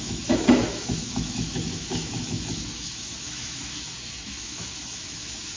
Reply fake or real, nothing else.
fake